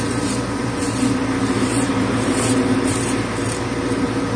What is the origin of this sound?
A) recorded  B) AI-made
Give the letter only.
B